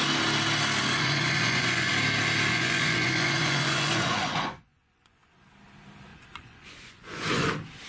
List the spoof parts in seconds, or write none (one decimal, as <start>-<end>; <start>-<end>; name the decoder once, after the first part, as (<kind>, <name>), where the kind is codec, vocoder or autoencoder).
0.8-1.9 (vocoder, Vocos); 2.5-5.3; 6.1-7.5